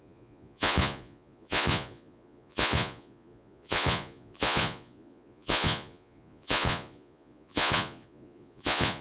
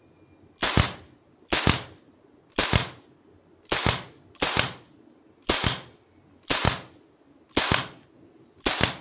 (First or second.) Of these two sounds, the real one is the second